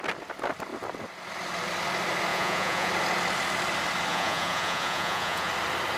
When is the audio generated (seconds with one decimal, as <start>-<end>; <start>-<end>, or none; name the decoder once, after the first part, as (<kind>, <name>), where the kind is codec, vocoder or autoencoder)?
2.3-2.9 (vocoder, Vocos); 4.1-5.5